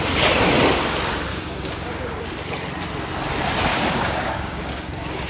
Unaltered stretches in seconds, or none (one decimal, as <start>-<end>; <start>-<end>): 0.0-1.3; 2.3-3.7

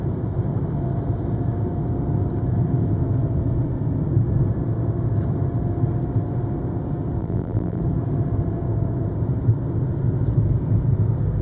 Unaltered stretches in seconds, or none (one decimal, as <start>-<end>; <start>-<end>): 0.0-7.2; 7.8-11.4

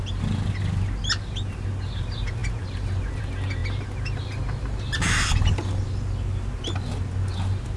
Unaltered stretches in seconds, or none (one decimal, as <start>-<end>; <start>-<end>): 0.0-7.8

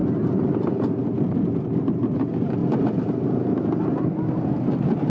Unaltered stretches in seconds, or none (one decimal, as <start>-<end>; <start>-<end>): 0.0-5.1

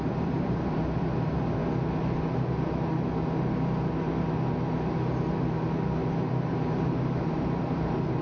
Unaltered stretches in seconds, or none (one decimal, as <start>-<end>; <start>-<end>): 1.6-6.1